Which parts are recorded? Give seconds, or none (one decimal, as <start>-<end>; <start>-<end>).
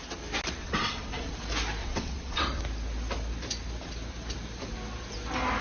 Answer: 0.0-0.6; 1.3-1.8; 2.6-5.6